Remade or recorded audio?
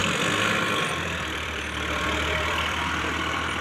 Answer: remade